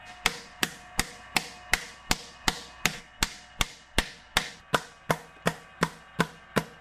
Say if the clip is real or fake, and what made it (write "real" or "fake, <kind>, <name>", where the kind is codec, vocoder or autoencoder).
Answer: real